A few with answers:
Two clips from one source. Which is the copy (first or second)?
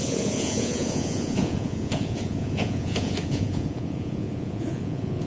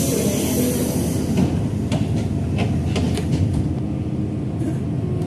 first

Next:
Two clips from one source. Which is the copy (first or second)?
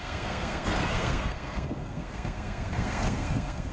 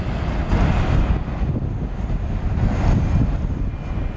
first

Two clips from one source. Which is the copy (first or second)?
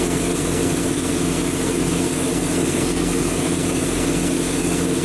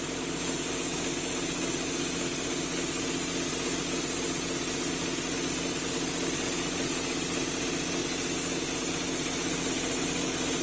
first